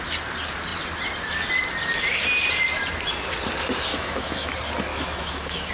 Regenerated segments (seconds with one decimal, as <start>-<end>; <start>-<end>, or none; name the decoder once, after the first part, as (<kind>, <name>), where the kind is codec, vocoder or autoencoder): 3.9-4.5 (autoencoder, DAC-VAE); 4.9-5.7